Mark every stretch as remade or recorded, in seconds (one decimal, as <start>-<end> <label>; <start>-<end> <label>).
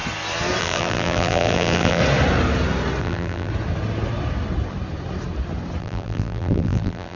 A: 0.0-0.6 recorded; 0.6-2.0 remade; 2.0-3.0 recorded; 3.0-3.5 remade; 3.5-5.8 recorded; 5.8-7.2 remade